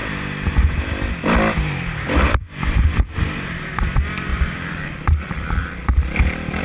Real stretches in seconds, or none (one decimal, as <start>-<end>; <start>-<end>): 0.0-2.4; 3.2-4.3